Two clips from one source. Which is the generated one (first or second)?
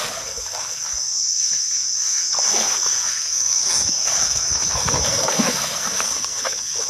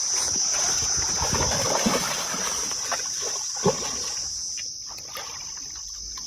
first